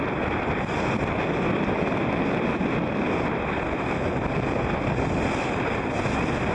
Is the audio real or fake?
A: real